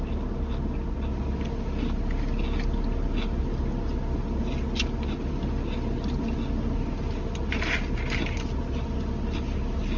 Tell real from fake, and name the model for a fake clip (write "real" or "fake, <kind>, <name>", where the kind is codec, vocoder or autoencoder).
real